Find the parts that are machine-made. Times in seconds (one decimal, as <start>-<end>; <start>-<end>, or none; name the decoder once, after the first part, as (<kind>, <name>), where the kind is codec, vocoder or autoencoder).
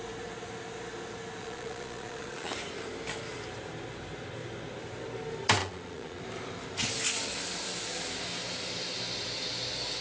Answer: 1.4-2.5 (vocoder, Vocos); 5.6-6.2